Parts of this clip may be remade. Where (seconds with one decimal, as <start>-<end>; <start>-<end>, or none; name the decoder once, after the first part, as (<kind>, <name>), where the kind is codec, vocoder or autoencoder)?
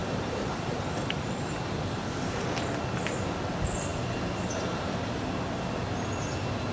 0.0-2.2 (vocoder, BigVGAN v2); 3.9-5.3